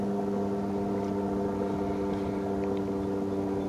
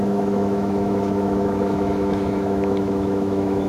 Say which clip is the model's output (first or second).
second